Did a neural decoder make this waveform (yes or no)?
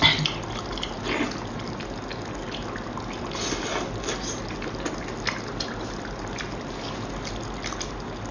no